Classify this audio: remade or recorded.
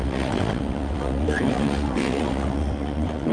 remade